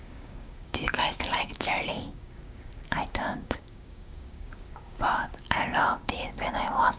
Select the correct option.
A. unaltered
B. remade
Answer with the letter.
B